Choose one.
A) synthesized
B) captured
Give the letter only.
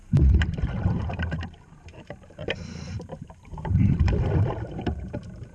A